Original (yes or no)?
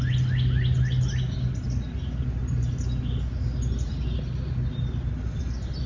yes